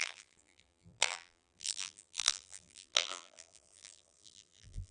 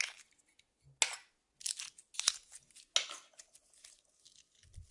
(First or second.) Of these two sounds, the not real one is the first